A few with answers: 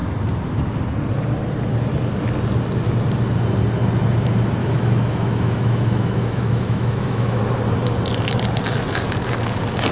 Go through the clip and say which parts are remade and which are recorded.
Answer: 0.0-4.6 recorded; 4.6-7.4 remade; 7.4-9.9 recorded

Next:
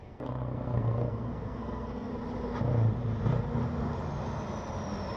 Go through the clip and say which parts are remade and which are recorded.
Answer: 0.0-2.1 remade; 2.1-5.2 recorded

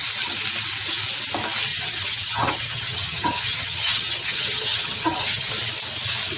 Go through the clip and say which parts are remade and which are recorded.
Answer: 0.0-1.7 recorded; 1.7-5.5 remade; 5.5-6.4 recorded

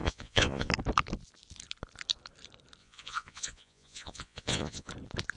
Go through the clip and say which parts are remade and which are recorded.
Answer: 0.0-0.7 remade; 0.7-2.8 recorded; 2.8-4.9 remade; 4.9-5.4 recorded

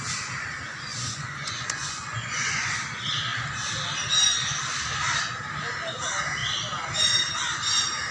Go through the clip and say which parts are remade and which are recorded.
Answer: 0.0-0.7 recorded; 0.7-2.7 remade; 2.7-8.1 recorded

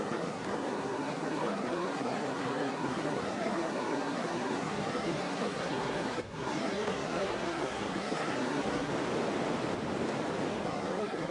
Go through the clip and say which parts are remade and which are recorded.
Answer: 0.0-8.9 remade; 8.9-10.5 recorded; 10.5-11.3 remade

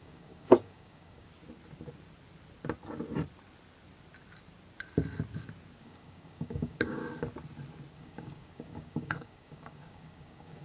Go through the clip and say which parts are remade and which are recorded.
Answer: 0.0-1.3 remade; 1.3-5.8 recorded; 5.8-7.0 remade; 7.0-7.9 recorded; 7.9-10.6 remade